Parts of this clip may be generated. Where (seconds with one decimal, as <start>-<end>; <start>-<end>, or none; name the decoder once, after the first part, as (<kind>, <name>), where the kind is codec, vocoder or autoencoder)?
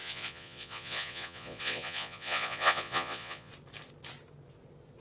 0.0-3.5 (vocoder, Vocos)